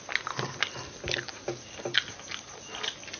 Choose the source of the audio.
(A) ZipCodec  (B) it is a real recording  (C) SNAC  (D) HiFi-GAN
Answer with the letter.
B